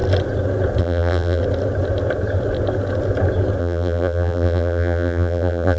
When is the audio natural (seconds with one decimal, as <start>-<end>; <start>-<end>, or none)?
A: 0.0-0.8; 1.4-3.6